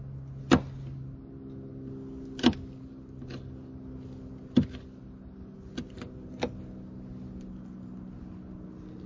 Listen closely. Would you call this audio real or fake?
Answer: real